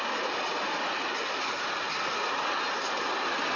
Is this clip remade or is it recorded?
recorded